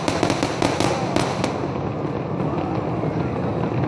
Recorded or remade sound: recorded